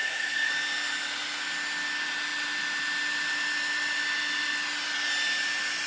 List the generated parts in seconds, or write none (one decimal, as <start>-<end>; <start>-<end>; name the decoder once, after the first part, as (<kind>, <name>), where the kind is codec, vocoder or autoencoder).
0.0-0.5 (codec, SNAC)